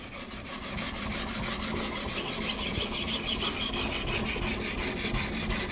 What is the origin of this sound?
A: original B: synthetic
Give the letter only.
A